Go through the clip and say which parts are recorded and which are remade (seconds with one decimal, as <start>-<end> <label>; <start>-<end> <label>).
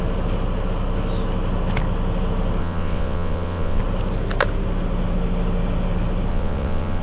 0.0-2.6 recorded; 2.6-3.8 remade; 3.8-6.3 recorded; 6.3-7.0 remade